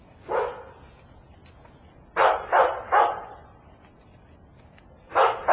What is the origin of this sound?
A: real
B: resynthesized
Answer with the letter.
A